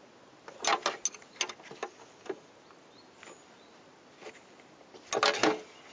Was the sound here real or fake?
real